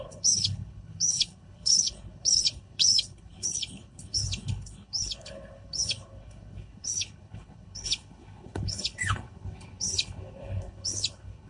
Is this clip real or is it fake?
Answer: fake